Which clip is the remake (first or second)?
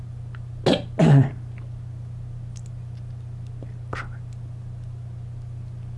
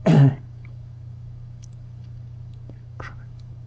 second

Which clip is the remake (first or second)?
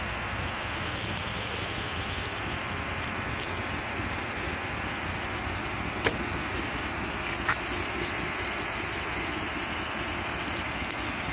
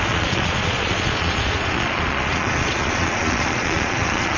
second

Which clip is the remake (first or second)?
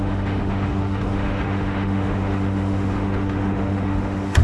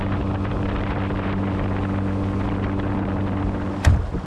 first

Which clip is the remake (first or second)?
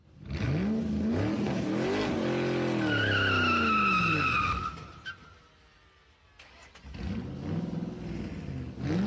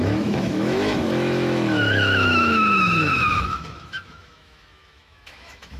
second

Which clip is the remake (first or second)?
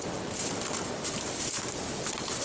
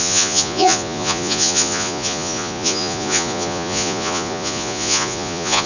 second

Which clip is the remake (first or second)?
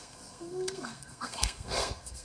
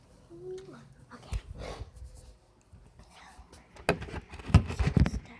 first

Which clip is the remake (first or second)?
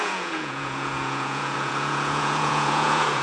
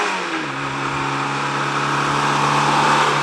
first